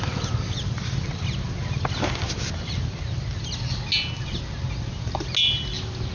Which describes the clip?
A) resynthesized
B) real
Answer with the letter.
B